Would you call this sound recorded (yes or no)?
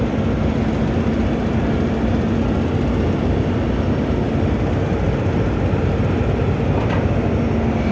yes